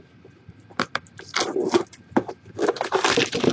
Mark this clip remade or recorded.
recorded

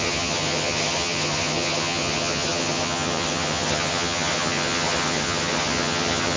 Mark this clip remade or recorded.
remade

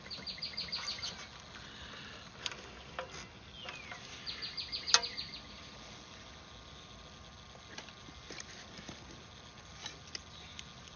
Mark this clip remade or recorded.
recorded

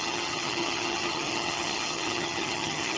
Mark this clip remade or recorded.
remade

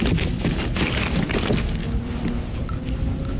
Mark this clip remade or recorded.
recorded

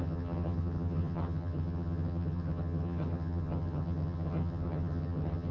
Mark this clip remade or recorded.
remade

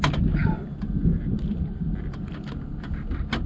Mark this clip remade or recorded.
recorded